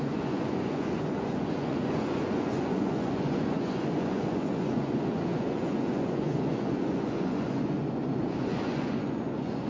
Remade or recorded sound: remade